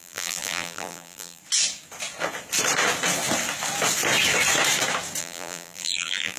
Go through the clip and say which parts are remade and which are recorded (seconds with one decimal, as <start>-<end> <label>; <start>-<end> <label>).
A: 0.0-1.4 remade; 1.4-5.2 recorded; 5.2-6.4 remade